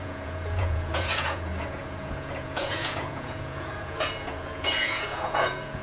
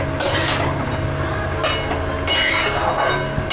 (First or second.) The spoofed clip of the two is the first